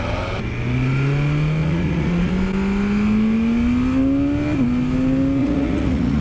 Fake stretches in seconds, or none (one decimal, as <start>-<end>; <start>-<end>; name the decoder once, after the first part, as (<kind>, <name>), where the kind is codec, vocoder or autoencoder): 1.6-2.3 (vocoder, Vocos); 5.4-6.2